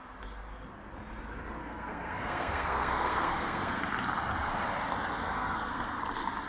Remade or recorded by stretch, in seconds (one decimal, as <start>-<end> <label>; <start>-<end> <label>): 0.0-1.6 recorded; 1.6-3.8 remade; 3.8-5.2 recorded; 5.2-6.0 remade; 6.0-6.5 recorded